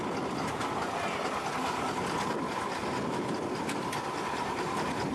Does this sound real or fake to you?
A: real